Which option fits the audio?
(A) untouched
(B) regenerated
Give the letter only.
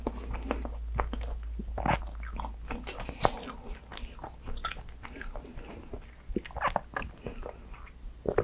A